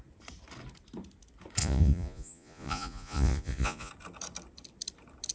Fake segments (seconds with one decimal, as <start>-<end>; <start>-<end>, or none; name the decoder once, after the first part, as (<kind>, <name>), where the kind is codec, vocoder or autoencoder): 1.6-3.9 (vocoder, Vocos)